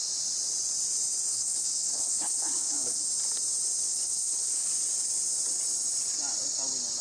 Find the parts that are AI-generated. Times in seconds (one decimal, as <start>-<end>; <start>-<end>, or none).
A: 1.3-3.0; 3.9-4.7